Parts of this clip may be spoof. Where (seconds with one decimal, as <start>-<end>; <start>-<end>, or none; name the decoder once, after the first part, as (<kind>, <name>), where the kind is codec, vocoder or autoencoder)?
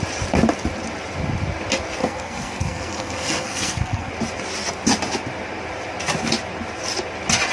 2.0-4.1 (codec, SNAC)